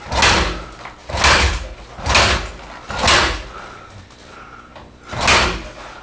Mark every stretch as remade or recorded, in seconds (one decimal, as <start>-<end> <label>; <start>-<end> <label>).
0.0-6.0 recorded